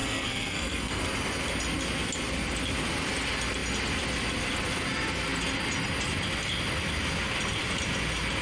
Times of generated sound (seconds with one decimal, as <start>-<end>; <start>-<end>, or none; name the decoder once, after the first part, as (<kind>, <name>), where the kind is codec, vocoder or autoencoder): 0.0-1.0 (codec, SNAC)